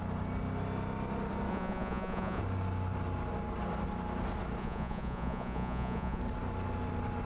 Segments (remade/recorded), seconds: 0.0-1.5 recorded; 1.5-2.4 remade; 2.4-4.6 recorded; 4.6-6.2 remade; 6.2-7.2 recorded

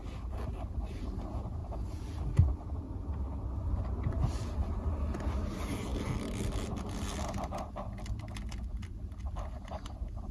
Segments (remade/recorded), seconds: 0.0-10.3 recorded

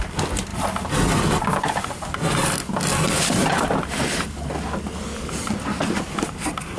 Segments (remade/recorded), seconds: 0.0-5.8 recorded; 5.8-6.8 remade